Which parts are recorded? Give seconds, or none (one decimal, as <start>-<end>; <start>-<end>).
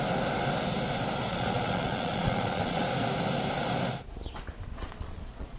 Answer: 0.0-1.3; 2.8-4.7